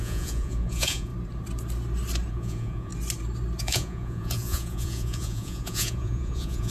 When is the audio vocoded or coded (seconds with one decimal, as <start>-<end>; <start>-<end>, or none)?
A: 0.0-1.1; 2.3-2.9; 3.6-6.7